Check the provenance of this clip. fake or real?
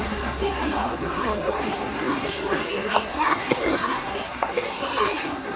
fake